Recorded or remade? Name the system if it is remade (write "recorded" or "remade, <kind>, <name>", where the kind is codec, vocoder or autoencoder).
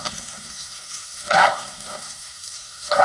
remade, codec, SNAC